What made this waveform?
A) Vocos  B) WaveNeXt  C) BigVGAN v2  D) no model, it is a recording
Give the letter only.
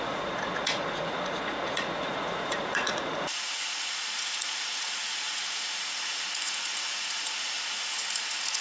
A